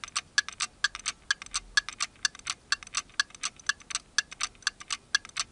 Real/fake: real